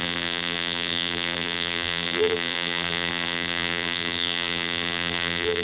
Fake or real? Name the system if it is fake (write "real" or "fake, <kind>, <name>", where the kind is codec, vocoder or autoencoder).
fake, vocoder, BigVGAN v2